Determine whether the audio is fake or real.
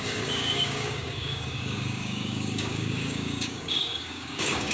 fake